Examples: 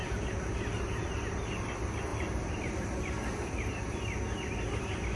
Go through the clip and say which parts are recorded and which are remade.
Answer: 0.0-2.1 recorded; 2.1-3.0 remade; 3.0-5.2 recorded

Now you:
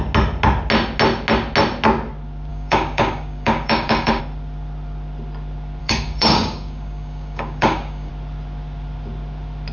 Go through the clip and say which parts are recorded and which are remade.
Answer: 0.0-2.5 recorded; 2.5-4.2 remade; 4.2-5.8 recorded; 5.8-8.1 remade; 8.1-9.7 recorded

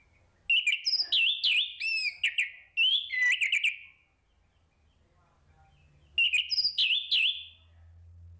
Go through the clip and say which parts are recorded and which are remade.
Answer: 0.0-8.4 recorded

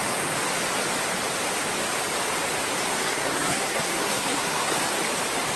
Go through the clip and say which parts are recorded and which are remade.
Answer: 0.0-2.9 recorded; 2.9-4.7 remade; 4.7-5.6 recorded

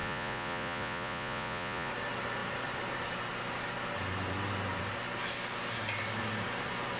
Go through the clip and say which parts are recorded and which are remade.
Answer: 0.0-1.9 remade; 1.9-7.0 recorded

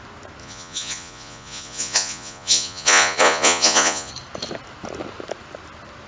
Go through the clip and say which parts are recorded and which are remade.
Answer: 0.0-0.4 recorded; 0.4-4.1 remade; 4.1-6.1 recorded

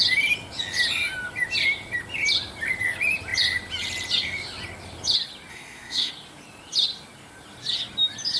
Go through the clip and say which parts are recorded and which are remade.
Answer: 0.0-5.5 recorded; 5.5-6.1 remade; 6.1-8.4 recorded